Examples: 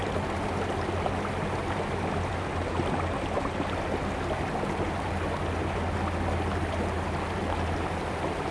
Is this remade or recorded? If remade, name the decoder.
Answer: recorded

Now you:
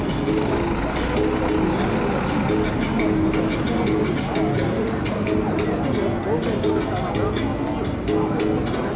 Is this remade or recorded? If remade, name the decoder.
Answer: recorded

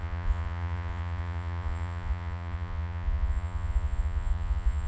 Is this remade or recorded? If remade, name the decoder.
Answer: remade, vocoder, Vocos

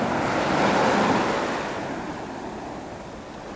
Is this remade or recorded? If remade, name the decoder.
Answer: recorded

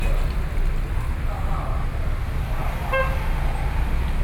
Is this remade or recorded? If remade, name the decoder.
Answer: recorded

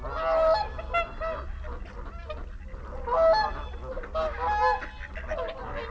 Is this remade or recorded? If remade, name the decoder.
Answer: recorded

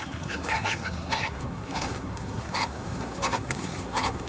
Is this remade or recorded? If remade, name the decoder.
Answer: remade, codec, SNAC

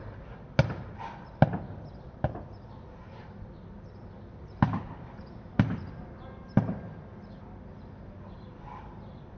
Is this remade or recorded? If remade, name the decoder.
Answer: recorded